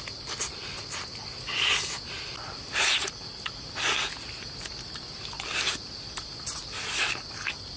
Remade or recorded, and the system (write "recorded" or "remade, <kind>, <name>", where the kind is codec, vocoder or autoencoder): recorded